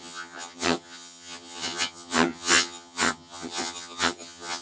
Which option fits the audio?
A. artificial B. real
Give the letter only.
A